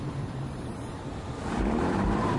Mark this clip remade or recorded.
remade